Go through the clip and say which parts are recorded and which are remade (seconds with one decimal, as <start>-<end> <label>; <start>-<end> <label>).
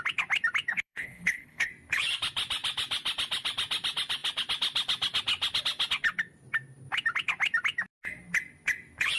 0.0-0.7 recorded; 0.7-1.7 remade; 1.7-9.2 recorded